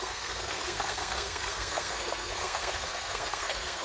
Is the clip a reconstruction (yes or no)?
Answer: yes